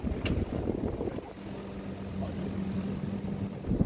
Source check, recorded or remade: recorded